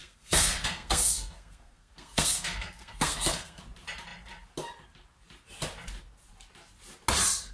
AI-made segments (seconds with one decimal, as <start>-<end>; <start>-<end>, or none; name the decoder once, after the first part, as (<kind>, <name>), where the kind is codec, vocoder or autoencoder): 0.0-3.6 (codec, SNAC)